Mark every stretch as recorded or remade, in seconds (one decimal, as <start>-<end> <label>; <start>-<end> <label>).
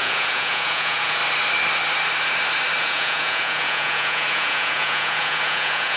0.0-1.2 remade; 1.2-2.8 recorded; 2.8-6.0 remade